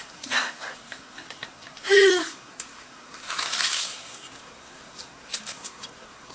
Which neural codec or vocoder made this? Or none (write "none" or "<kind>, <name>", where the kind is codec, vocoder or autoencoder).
codec, SNAC